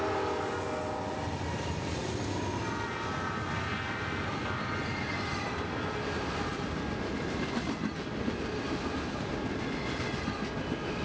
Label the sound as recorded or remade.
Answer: recorded